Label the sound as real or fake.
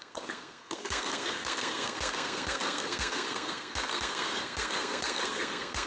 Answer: fake